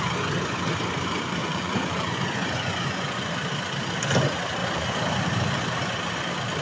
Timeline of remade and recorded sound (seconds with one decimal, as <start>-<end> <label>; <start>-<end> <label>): 0.0-1.4 recorded; 1.4-3.3 remade; 3.3-4.6 recorded; 4.6-5.2 remade; 5.2-6.6 recorded